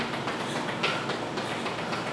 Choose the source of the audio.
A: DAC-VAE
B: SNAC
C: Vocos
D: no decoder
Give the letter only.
D